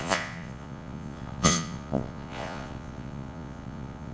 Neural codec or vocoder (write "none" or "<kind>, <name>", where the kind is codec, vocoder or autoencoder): vocoder, Vocos